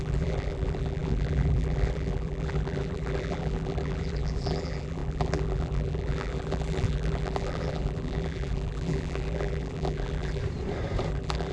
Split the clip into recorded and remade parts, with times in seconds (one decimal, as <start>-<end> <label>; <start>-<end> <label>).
0.0-10.4 remade; 10.4-11.1 recorded; 11.1-11.5 remade